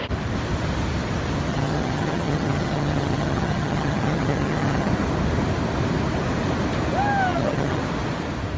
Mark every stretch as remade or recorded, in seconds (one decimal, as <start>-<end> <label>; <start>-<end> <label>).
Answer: 0.0-1.5 recorded; 1.5-4.9 remade; 4.9-7.3 recorded; 7.3-7.8 remade; 7.8-8.6 recorded